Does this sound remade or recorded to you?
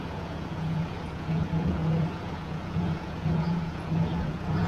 remade